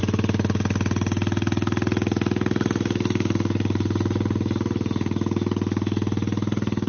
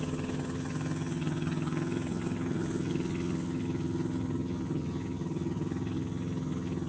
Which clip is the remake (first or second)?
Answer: second